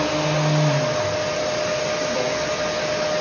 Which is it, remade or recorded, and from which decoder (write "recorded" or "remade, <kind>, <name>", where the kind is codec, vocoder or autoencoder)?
recorded